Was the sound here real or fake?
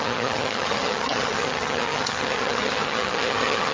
fake